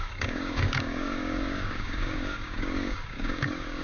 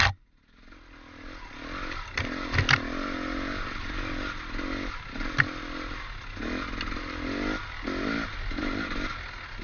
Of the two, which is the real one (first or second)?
second